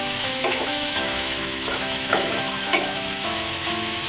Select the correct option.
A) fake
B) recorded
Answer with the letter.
A